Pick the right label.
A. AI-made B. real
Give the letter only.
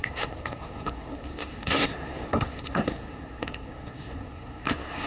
A